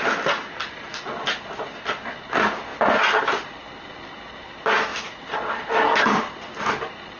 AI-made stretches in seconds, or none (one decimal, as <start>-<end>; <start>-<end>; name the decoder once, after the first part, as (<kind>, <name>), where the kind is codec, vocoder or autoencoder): none